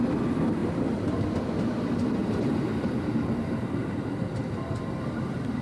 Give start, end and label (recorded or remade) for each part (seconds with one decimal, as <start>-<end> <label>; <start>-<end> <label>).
0.0-0.6 recorded; 0.6-1.2 remade; 1.2-2.2 recorded; 2.2-5.6 remade